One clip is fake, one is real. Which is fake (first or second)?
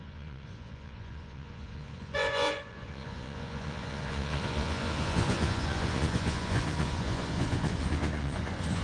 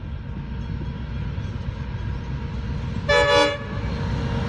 first